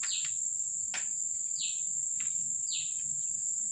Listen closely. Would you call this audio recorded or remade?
recorded